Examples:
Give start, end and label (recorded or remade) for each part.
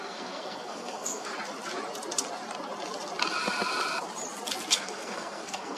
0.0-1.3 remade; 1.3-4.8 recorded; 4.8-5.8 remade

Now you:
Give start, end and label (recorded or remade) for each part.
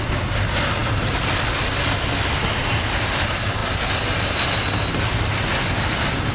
0.0-6.3 recorded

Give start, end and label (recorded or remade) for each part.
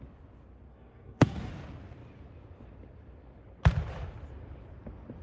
0.0-0.7 recorded; 0.7-1.5 remade; 1.5-5.2 recorded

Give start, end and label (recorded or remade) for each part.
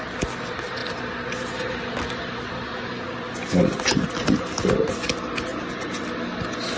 0.0-5.5 recorded; 5.5-6.0 remade; 6.0-6.8 recorded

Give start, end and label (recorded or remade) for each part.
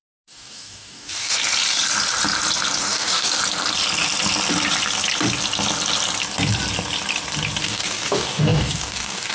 0.0-1.4 remade; 1.4-2.8 recorded; 2.8-3.3 remade; 3.3-7.6 recorded; 7.6-9.3 remade